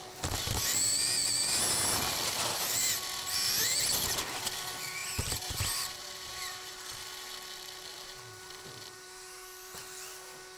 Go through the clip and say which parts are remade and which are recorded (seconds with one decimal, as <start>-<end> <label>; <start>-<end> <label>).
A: 0.0-5.0 recorded; 5.0-6.8 remade; 6.8-7.9 recorded; 7.9-9.8 remade; 9.8-10.6 recorded